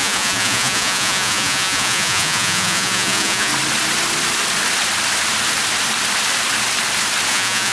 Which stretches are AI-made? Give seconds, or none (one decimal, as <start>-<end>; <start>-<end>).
0.0-3.5; 7.3-7.7